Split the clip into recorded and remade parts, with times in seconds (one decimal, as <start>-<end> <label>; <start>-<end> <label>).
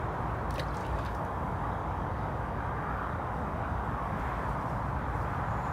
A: 0.0-0.8 recorded; 0.8-4.2 remade; 4.2-5.7 recorded